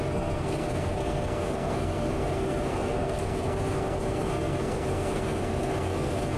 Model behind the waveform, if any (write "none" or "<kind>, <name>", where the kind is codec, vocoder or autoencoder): codec, SNAC